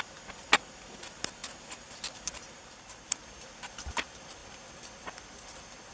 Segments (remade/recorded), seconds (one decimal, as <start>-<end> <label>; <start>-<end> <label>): 0.0-5.9 recorded